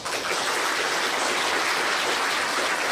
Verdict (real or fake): real